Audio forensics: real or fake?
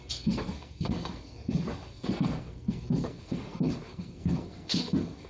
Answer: fake